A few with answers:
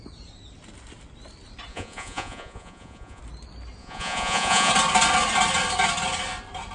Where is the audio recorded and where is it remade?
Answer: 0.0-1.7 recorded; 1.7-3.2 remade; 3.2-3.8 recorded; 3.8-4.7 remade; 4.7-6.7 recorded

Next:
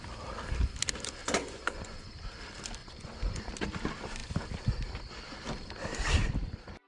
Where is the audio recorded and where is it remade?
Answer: 0.0-1.2 recorded; 1.2-2.1 remade; 2.1-2.8 recorded; 2.8-3.5 remade; 3.5-6.9 recorded

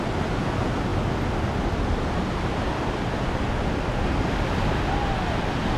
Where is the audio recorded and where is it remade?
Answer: 0.0-5.8 recorded